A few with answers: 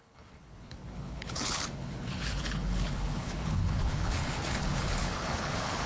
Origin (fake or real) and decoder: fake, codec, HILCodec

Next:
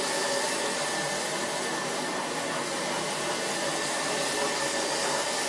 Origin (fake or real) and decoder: real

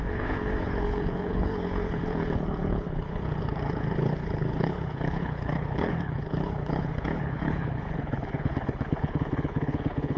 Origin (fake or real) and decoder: fake, codec, HILCodec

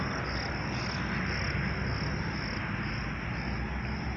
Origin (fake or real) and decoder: real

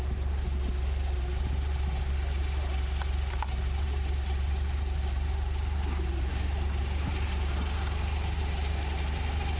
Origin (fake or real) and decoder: real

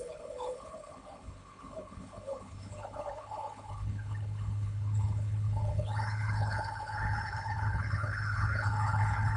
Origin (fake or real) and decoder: fake, codec, HILCodec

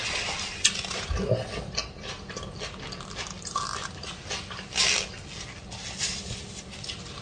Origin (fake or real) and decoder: real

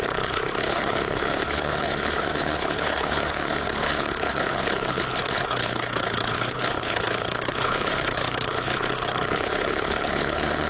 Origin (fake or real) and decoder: fake, codec, HILCodec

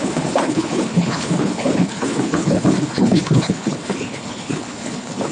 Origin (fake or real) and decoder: fake, codec, HILCodec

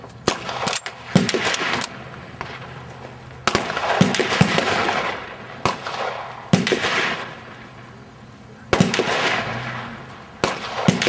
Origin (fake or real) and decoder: real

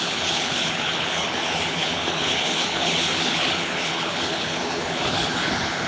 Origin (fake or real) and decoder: fake, codec, HILCodec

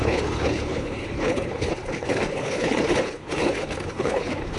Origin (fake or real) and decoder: fake, codec, HILCodec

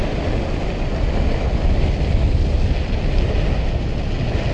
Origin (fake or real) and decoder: real